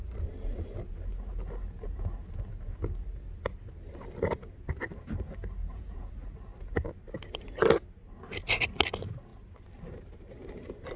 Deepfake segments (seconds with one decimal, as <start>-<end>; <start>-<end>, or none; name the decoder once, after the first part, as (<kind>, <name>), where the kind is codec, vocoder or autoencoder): 5.6-6.1 (vocoder, Vocos)